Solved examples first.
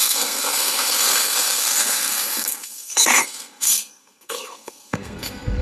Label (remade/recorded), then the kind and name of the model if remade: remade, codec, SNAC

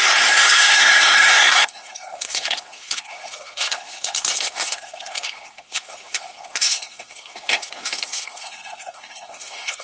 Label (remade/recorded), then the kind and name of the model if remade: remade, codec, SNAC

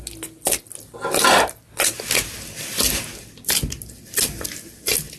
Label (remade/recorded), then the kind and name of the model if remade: recorded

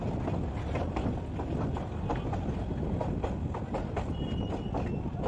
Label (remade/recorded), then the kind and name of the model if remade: recorded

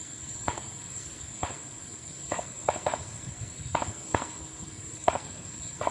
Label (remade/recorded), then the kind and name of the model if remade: remade, codec, SNAC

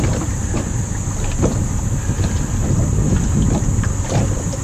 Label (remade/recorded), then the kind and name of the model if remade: recorded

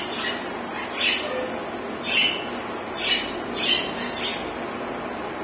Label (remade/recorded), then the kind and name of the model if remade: recorded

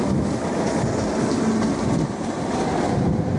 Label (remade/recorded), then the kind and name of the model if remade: recorded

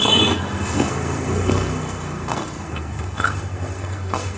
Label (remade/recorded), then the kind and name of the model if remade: remade, codec, SNAC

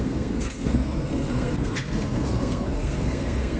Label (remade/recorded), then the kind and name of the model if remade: remade, codec, SNAC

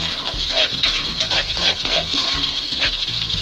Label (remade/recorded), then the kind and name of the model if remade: remade, codec, SNAC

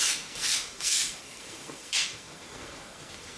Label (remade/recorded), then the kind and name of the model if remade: remade, codec, SNAC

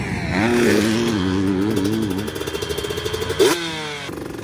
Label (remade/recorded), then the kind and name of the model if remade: recorded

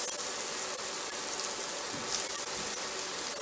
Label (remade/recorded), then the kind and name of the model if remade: recorded